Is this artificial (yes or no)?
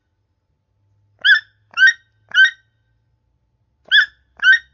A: no